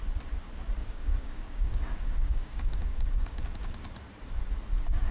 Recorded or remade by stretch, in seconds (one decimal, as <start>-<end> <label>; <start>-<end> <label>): 0.0-0.8 recorded; 0.8-3.9 remade; 3.9-5.1 recorded